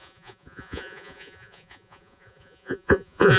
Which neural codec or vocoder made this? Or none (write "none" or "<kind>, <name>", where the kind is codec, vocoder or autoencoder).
vocoder, Vocos